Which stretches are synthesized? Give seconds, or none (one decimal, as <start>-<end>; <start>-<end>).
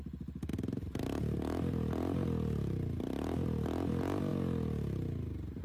none